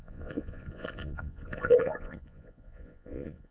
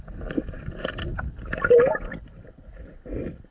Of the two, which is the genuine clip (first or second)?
second